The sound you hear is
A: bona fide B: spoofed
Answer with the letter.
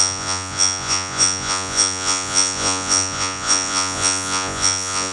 B